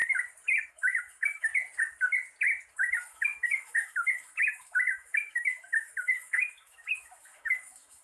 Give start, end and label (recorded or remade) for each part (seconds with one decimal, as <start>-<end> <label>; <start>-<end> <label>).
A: 0.0-0.7 recorded; 0.7-1.5 remade; 1.5-2.7 recorded; 2.7-8.0 remade